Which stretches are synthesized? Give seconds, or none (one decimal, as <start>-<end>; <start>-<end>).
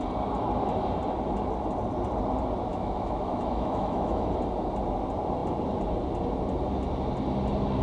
2.7-4.3